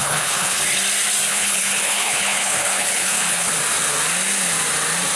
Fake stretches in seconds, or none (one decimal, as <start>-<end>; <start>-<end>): 0.0-0.6; 1.3-3.5